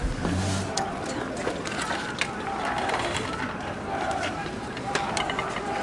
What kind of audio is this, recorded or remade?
recorded